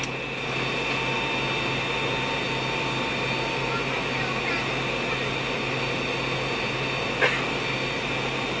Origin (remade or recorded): recorded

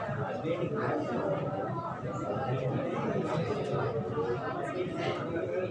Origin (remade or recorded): recorded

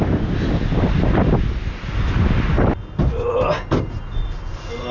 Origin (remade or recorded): recorded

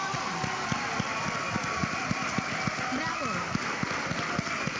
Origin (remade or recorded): recorded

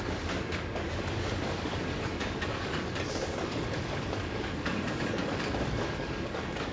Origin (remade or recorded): remade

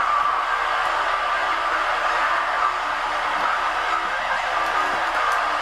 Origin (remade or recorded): recorded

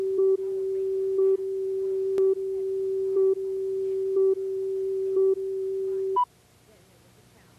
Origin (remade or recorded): recorded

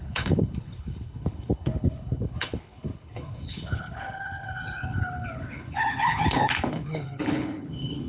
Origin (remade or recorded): remade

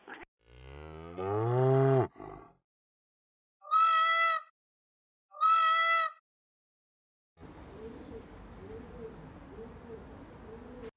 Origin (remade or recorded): recorded